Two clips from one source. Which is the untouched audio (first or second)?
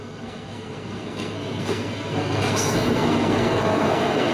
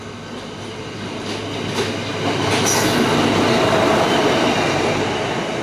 second